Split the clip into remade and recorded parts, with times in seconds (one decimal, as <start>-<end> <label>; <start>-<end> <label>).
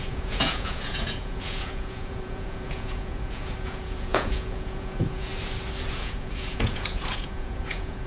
0.0-5.3 remade; 5.3-5.9 recorded; 5.9-8.1 remade